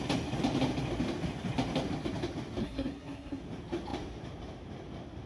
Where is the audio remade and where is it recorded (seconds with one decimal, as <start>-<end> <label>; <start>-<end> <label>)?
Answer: 0.0-2.6 recorded; 2.6-3.4 remade; 3.4-5.3 recorded